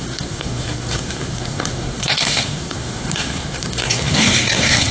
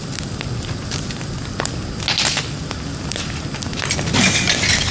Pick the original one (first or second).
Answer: second